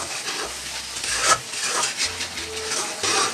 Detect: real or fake real